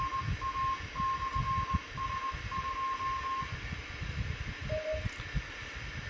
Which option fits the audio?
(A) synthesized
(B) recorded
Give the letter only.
B